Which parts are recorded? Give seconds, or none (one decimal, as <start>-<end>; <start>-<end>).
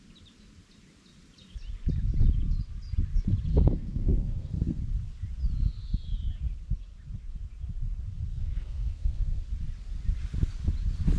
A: 0.0-3.5; 4.8-8.3; 9.4-11.2